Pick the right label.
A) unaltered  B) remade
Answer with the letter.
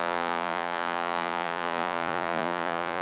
B